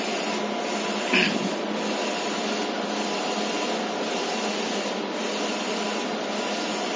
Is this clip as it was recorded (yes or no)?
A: yes